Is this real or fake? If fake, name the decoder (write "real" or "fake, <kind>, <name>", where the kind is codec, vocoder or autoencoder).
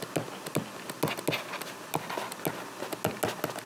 real